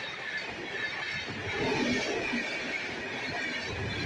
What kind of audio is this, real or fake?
real